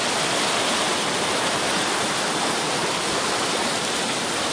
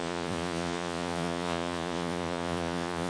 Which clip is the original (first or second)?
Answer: first